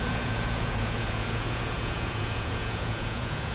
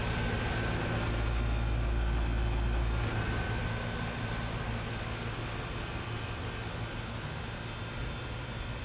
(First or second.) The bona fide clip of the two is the second